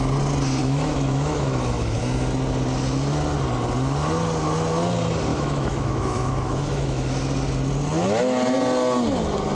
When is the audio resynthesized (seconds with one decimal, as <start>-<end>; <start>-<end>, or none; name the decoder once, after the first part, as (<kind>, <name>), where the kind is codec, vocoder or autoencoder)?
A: 0.6-2.0 (autoencoder, DAC-VAE); 5.3-7.2